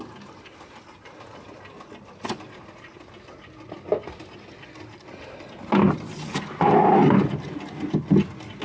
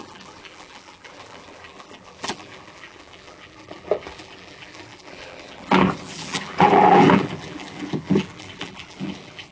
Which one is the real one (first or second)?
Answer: first